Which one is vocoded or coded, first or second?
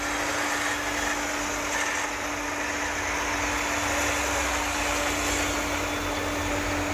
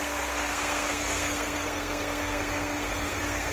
second